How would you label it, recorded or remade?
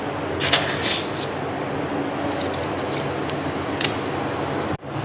recorded